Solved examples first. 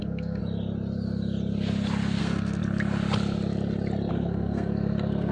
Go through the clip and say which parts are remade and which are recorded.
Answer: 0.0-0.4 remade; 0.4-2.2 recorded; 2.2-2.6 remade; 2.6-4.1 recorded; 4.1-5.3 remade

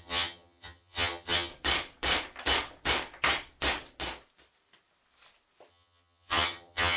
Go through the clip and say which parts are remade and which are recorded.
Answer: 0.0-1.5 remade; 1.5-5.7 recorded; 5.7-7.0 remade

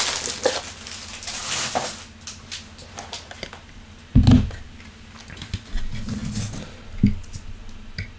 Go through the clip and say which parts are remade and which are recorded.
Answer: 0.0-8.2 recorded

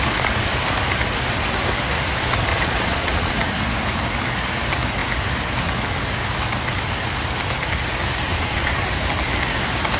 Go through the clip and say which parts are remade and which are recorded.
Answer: 0.0-2.5 recorded; 2.5-3.3 remade; 3.3-8.3 recorded; 8.3-8.8 remade; 8.8-10.0 recorded

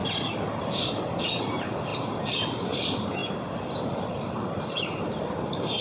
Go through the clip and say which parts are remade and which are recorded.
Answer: 0.0-1.2 recorded; 1.2-3.2 remade; 3.2-4.3 recorded; 4.3-5.8 remade

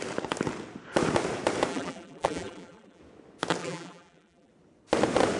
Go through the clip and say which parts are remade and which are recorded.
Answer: 0.0-1.7 recorded; 1.7-3.0 remade; 3.0-3.6 recorded; 3.6-4.5 remade; 4.5-5.4 recorded